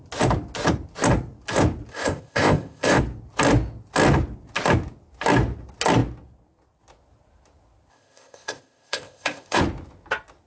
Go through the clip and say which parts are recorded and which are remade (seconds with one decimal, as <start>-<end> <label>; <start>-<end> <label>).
0.0-1.9 recorded; 1.9-3.0 remade; 3.0-7.9 recorded; 7.9-9.6 remade; 9.6-10.5 recorded